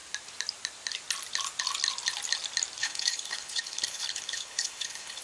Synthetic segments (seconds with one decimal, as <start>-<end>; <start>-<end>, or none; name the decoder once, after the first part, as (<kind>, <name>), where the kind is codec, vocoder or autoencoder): 2.8-5.2 (codec, HILCodec)